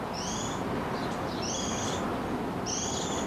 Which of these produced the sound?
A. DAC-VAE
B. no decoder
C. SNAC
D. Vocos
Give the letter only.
B